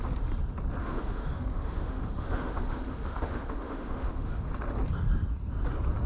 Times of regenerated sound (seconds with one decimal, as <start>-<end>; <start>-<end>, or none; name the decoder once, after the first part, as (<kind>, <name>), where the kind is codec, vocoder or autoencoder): 0.8-4.5 (autoencoder, DAC-VAE)